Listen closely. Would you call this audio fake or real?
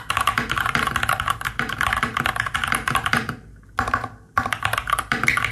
real